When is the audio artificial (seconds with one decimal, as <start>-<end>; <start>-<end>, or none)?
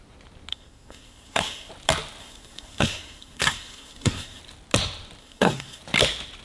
0.5-1.7; 2.2-4.4; 5.2-5.8